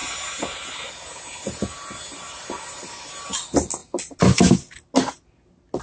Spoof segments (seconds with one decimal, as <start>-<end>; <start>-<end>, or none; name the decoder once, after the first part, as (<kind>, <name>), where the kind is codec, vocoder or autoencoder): none